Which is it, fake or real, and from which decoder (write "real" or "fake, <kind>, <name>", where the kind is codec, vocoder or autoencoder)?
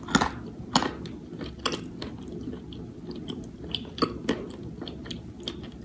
real